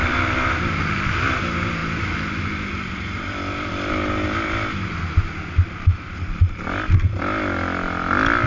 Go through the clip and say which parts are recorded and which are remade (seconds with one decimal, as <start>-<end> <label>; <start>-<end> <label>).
0.0-8.5 recorded